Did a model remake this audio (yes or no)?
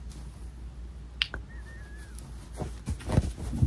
no